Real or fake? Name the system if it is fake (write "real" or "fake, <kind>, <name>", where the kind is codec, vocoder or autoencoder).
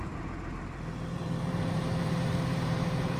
fake, vocoder, BigVGAN v2